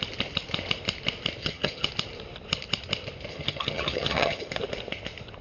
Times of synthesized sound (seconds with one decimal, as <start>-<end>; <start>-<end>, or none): 1.4-1.9; 3.3-4.5

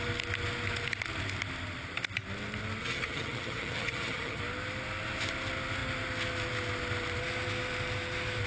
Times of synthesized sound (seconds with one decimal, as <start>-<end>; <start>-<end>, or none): 2.8-4.4

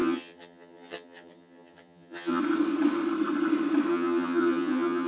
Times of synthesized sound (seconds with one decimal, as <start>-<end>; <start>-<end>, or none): 0.0-2.4; 3.9-5.1